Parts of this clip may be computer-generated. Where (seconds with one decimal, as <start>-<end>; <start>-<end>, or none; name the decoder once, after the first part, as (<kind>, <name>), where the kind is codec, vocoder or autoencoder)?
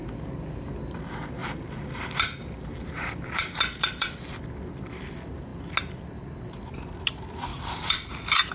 1.4-4.2 (vocoder, BigVGAN v2); 7.5-8.5